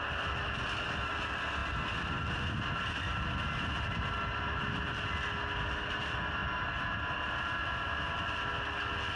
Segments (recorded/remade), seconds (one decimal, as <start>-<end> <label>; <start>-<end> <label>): 0.0-9.2 recorded